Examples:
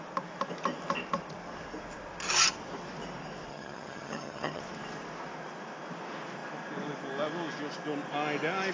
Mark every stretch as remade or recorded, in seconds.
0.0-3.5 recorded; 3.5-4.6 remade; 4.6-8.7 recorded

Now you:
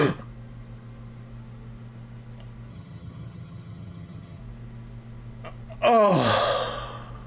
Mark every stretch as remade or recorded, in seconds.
0.0-2.7 recorded; 2.7-4.4 remade; 4.4-7.3 recorded

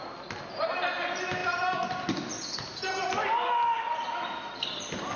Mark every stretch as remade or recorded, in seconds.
0.0-5.2 recorded

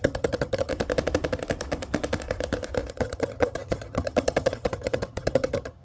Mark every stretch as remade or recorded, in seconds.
0.0-0.7 remade; 0.7-2.9 recorded; 2.9-5.8 remade

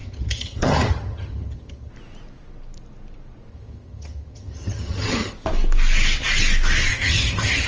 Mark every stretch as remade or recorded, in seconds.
0.0-1.9 remade; 1.9-3.5 recorded; 3.5-5.3 remade; 5.3-6.9 recorded; 6.9-7.7 remade

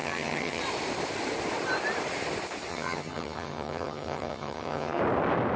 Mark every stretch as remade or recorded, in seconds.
0.0-0.6 remade; 0.6-2.7 recorded; 2.7-5.0 remade; 5.0-5.6 recorded

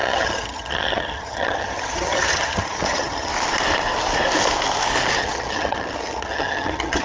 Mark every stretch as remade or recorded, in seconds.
0.0-3.3 remade; 3.3-5.2 recorded; 5.2-7.0 remade

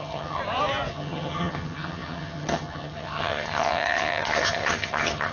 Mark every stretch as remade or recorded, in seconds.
0.0-0.4 remade; 0.4-0.9 recorded; 0.9-5.3 remade